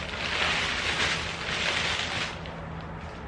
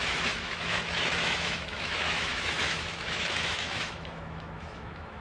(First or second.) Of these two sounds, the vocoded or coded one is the second